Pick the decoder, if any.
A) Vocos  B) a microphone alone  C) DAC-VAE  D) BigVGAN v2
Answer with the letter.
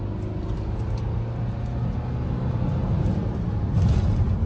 B